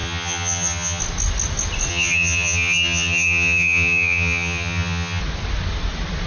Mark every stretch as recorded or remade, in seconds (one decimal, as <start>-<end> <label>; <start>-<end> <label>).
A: 0.0-1.0 remade; 1.0-1.9 recorded; 1.9-5.2 remade; 5.2-6.3 recorded